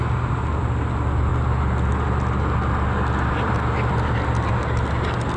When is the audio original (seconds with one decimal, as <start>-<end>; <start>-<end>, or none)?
0.0-5.4